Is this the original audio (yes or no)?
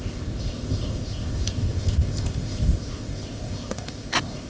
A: no